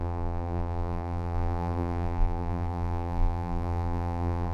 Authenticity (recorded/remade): remade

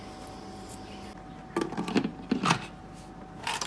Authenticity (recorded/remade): recorded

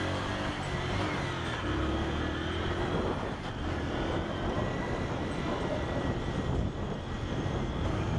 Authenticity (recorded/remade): recorded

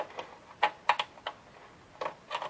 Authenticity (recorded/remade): recorded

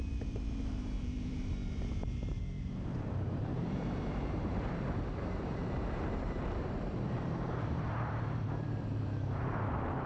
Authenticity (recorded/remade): remade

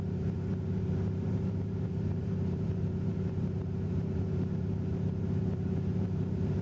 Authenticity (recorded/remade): remade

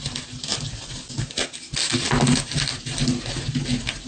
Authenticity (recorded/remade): recorded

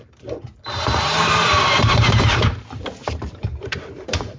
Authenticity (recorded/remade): remade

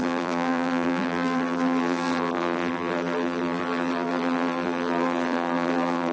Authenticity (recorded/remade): remade